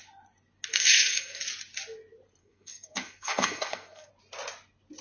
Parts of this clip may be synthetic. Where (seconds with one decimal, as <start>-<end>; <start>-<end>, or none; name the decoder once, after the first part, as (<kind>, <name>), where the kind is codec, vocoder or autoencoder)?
0.7-1.4 (codec, SNAC); 2.4-4.1